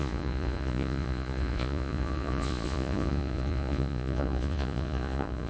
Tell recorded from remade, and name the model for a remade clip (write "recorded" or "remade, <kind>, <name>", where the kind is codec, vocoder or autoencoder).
remade, vocoder, Vocos